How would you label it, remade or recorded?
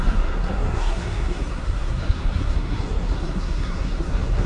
remade